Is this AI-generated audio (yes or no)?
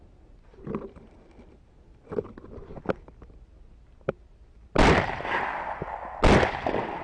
no